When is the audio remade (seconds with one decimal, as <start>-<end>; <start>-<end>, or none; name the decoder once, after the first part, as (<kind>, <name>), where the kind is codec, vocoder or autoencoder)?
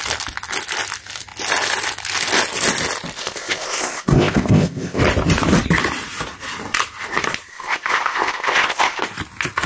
3.2-5.0 (codec, ZipCodec); 7.5-9.0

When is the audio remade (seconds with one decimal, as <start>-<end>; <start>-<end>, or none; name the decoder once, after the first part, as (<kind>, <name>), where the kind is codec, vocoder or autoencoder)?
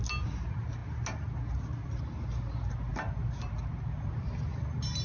none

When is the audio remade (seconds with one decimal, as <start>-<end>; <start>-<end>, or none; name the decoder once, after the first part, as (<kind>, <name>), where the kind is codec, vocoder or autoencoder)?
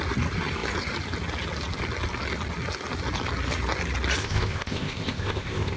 4.2-5.8 (codec, ZipCodec)